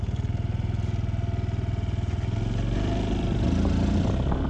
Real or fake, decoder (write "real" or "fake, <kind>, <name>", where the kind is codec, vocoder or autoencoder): real